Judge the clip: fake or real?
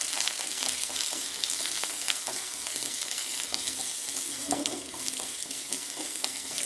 fake